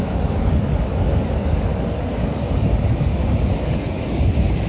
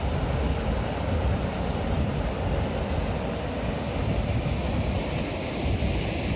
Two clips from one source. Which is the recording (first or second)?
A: second